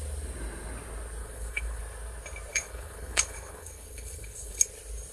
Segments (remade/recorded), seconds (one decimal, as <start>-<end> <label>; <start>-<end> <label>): 0.0-1.2 recorded; 1.2-1.8 remade; 1.8-2.5 recorded; 2.5-4.6 remade; 4.6-5.1 recorded

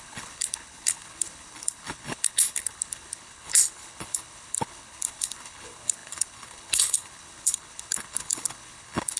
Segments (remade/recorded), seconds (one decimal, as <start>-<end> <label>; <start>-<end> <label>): 0.0-9.2 remade

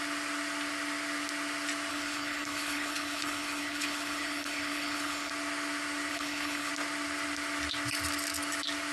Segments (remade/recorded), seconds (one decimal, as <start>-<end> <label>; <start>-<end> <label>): 0.0-1.9 recorded; 1.9-5.3 remade; 5.3-6.1 recorded; 6.1-6.7 remade; 6.7-8.9 recorded